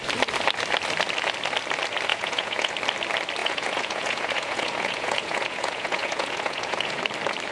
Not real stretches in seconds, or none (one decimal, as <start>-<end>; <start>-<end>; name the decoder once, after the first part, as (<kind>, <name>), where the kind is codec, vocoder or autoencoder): 2.1-2.7 (vocoder, Vocos); 3.4-7.0